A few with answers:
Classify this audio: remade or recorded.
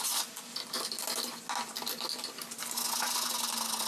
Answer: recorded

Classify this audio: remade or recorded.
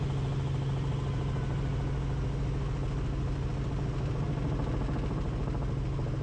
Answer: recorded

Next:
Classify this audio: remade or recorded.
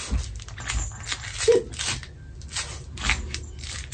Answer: recorded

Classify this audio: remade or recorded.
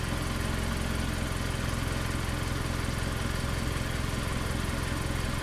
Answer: recorded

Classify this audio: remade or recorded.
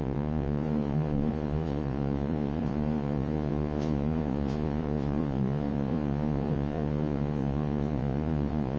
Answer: remade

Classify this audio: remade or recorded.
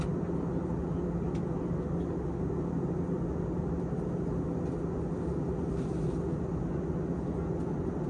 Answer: recorded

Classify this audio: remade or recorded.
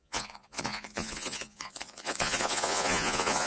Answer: remade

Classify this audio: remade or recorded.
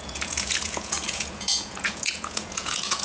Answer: remade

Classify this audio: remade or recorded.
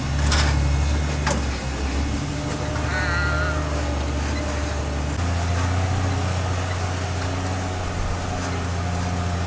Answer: recorded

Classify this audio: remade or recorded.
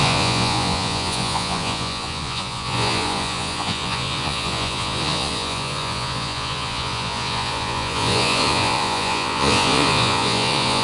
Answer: remade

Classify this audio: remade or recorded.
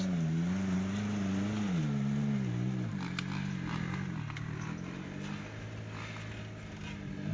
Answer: recorded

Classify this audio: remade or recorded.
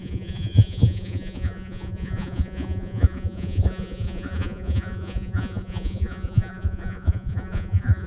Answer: remade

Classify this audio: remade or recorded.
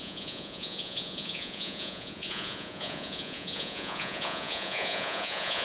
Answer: remade